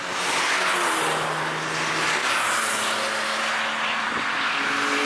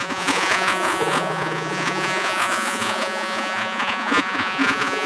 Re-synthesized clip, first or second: second